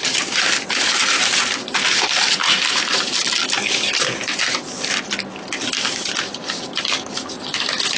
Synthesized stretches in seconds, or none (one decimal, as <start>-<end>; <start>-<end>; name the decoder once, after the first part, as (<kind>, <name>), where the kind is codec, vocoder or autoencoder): none